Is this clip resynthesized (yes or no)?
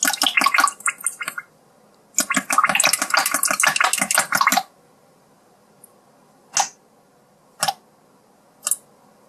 no